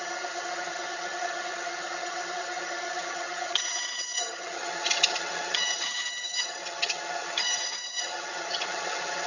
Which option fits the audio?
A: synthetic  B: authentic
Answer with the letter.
A